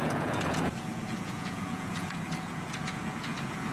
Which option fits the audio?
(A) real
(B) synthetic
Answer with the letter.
B